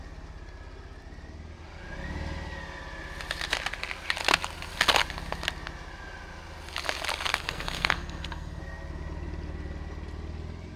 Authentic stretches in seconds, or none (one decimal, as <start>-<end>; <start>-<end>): 0.0-7.3; 8.6-10.8